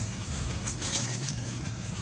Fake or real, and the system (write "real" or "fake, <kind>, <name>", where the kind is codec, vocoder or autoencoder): fake, codec, SNAC